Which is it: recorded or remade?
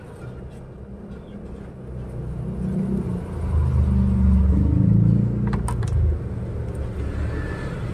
recorded